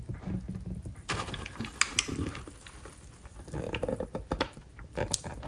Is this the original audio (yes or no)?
yes